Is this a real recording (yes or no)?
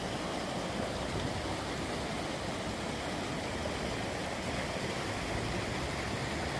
yes